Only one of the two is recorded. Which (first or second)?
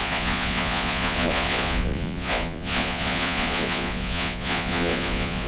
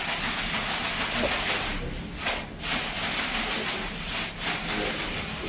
second